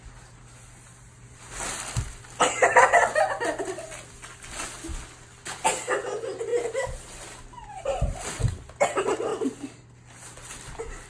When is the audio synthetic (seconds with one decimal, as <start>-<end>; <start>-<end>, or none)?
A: none